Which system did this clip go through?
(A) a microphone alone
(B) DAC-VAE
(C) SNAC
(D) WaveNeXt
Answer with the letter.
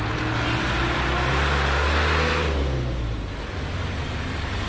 A